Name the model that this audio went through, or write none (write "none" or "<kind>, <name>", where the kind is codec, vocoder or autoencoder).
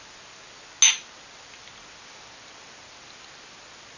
none